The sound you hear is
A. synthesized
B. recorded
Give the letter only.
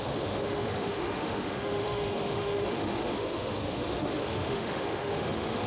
A